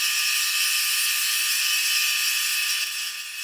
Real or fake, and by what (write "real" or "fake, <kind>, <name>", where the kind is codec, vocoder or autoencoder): real